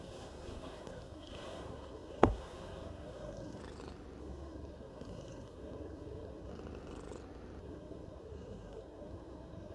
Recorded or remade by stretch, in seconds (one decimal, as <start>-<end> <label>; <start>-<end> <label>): 0.0-3.6 remade; 3.6-4.2 recorded; 4.2-6.5 remade; 6.5-7.6 recorded; 7.6-9.7 remade